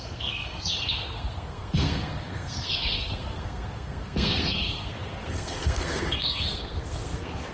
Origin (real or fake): fake